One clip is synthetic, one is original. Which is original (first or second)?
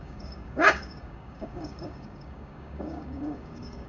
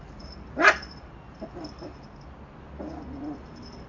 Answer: second